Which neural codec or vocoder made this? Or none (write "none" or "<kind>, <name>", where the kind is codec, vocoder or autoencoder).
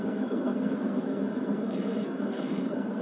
codec, SNAC